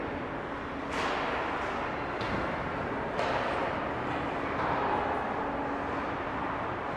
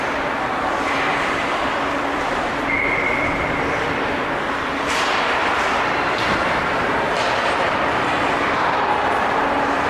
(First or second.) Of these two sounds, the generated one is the second